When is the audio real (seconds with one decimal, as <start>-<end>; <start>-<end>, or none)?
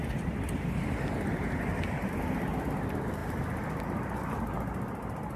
0.0-5.4